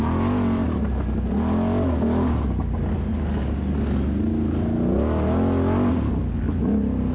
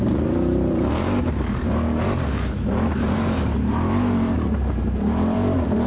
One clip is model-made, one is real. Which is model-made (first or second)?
second